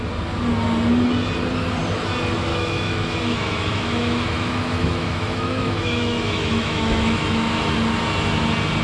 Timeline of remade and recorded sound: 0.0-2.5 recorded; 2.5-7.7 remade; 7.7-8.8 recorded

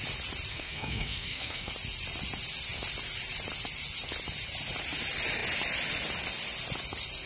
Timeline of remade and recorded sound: 0.0-0.5 recorded; 0.5-1.7 remade; 1.7-7.3 recorded